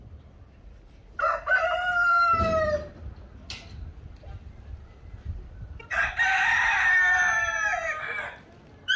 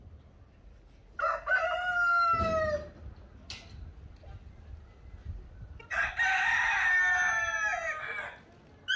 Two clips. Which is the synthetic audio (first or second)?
first